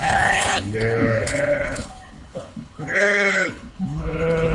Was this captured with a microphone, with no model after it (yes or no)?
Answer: no